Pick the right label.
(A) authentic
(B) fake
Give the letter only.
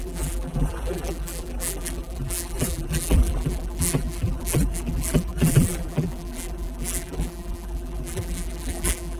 B